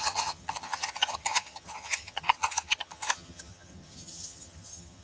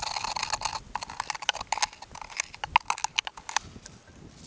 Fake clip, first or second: first